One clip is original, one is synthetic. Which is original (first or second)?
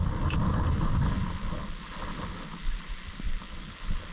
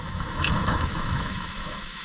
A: first